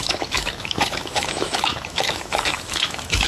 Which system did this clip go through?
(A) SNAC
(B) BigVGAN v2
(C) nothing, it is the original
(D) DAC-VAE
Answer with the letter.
D